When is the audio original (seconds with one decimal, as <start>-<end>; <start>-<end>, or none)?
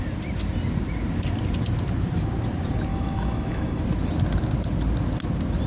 0.0-2.9; 3.8-5.7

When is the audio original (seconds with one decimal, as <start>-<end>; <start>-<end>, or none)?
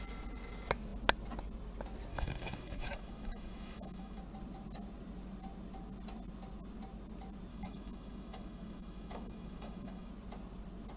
0.0-2.1; 4.2-7.5; 10.1-11.0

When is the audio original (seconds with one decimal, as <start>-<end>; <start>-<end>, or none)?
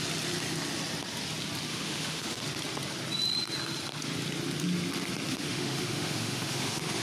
0.0-1.7; 2.4-5.3